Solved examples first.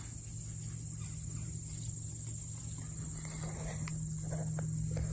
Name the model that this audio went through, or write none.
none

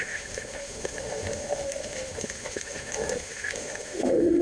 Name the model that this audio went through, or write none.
autoencoder, DAC-VAE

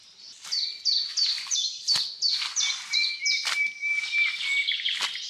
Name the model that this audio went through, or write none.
none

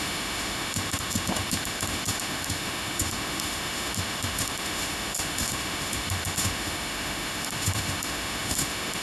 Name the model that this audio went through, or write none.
autoencoder, DAC-VAE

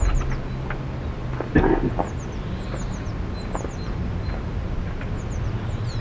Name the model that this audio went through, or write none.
none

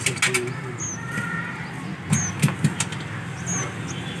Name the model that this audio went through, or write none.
none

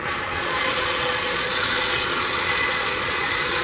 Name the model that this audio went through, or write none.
vocoder, Vocos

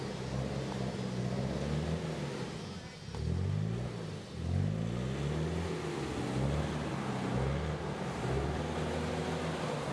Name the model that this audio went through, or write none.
none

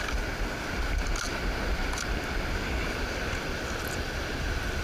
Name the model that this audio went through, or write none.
none